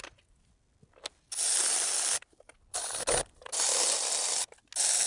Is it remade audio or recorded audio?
recorded